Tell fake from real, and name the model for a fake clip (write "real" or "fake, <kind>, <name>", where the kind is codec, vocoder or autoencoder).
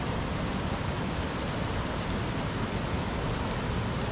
real